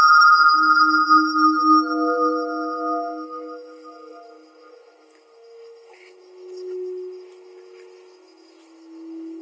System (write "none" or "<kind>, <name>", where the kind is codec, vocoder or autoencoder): autoencoder, DAC-VAE